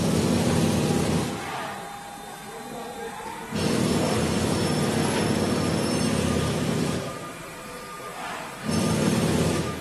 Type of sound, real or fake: real